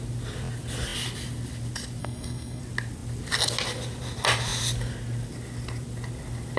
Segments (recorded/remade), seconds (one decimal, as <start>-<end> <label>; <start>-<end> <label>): 0.0-2.0 recorded; 2.0-2.6 remade; 2.6-6.6 recorded